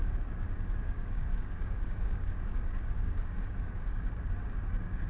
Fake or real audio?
fake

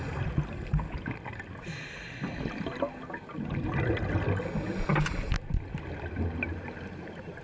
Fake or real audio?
real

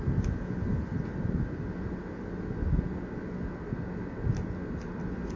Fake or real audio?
real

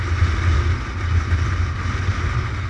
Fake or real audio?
real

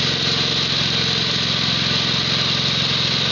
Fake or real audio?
real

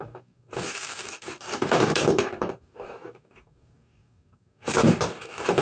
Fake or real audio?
fake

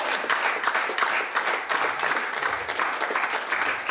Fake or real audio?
real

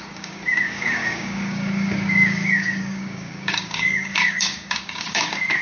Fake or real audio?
fake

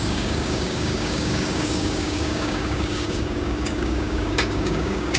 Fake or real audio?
fake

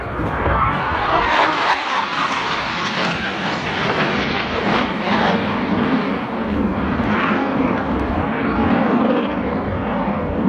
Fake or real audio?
fake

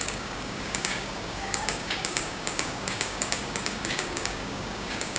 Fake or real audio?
fake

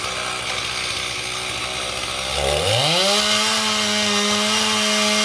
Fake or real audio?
real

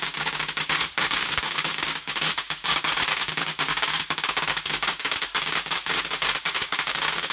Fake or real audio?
fake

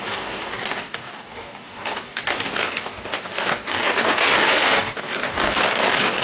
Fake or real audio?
fake